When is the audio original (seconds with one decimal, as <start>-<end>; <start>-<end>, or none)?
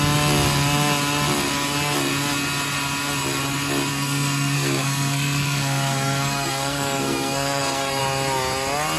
0.0-3.9; 8.0-9.0